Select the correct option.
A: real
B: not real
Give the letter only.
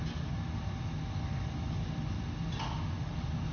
A